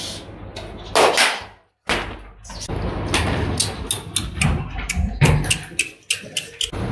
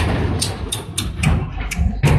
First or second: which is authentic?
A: first